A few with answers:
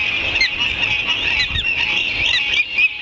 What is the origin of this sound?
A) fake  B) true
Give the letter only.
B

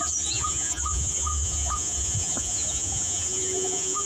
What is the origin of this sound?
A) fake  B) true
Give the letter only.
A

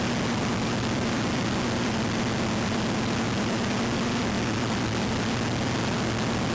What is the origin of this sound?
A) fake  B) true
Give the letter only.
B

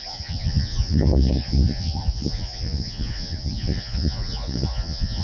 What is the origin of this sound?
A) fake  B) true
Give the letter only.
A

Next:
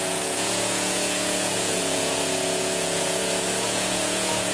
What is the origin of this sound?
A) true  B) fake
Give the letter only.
B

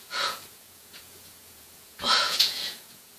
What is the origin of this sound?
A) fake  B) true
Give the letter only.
A